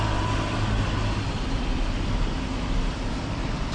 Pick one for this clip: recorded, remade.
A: remade